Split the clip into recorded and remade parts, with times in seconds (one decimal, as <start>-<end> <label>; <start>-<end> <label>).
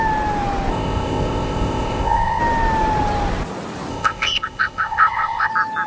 0.0-0.7 recorded; 0.7-2.4 remade; 2.4-3.9 recorded; 3.9-5.5 remade; 5.5-5.9 recorded